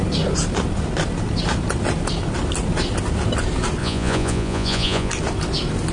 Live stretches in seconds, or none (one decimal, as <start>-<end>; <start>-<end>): 0.0-3.8; 5.1-5.9